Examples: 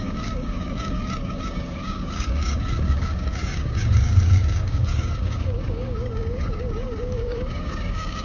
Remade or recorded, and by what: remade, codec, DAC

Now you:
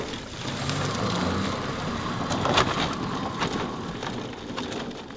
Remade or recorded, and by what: recorded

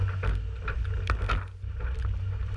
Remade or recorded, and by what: recorded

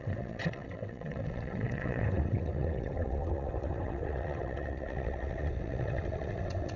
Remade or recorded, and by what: remade, vocoder, WaveNeXt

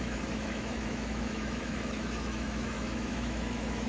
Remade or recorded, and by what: remade, autoencoder, DAC-VAE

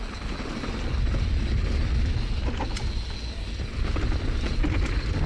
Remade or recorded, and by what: recorded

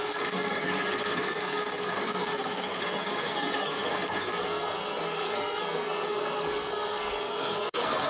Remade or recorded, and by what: remade, codec, SNAC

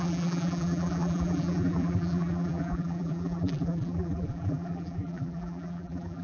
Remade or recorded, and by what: remade, vocoder, BigVGAN v2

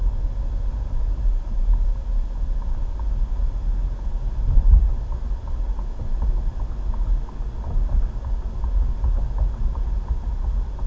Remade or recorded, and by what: recorded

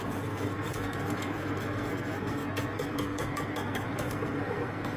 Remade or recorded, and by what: remade, codec, SNAC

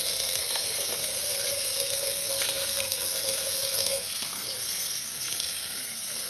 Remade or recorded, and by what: remade, codec, SNAC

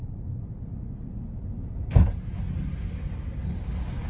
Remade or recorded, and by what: recorded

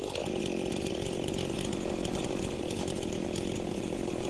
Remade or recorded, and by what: recorded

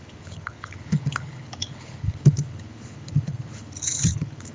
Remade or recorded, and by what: remade, codec, HILCodec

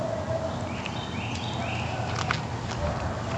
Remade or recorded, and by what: recorded